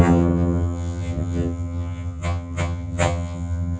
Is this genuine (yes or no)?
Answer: no